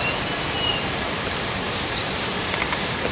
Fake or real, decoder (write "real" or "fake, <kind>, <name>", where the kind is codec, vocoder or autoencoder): real